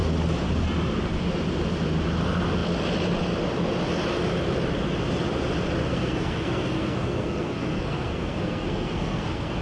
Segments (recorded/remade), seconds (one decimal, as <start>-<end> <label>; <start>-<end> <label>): 0.0-5.9 recorded; 5.9-9.6 remade